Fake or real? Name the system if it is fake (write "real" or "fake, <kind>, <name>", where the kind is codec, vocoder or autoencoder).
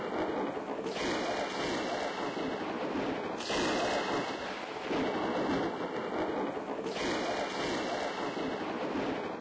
real